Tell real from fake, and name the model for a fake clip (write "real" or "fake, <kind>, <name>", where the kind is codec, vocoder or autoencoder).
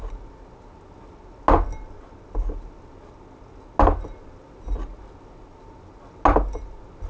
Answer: real